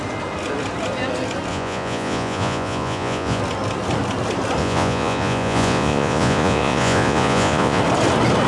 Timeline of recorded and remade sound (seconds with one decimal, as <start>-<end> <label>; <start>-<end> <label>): 0.0-1.5 recorded; 1.5-3.4 remade; 3.4-4.6 recorded; 4.6-7.8 remade; 7.8-8.5 recorded